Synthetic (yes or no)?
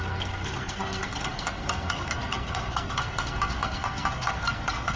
yes